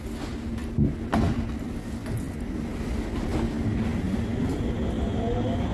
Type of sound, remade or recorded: recorded